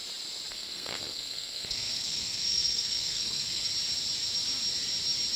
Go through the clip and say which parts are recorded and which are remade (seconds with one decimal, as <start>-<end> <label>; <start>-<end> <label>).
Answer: 0.0-0.5 recorded; 0.5-3.7 remade; 3.7-5.4 recorded